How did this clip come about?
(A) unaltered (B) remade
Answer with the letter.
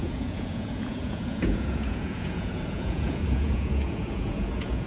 B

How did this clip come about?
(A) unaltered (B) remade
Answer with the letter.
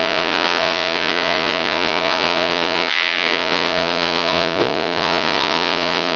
B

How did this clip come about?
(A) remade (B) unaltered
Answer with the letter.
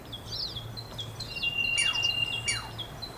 B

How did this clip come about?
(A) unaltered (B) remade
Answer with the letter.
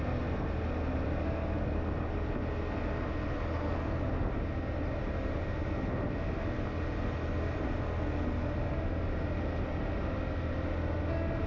A